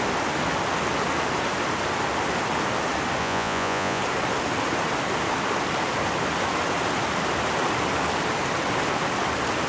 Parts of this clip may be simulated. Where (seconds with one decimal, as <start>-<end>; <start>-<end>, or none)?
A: 3.2-4.0